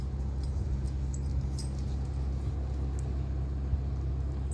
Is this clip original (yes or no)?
yes